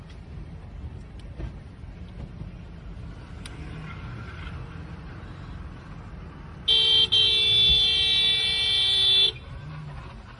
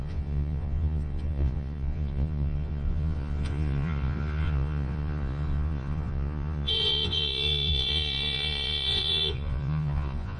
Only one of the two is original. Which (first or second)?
first